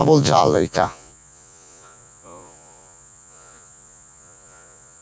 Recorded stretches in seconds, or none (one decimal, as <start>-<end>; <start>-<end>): none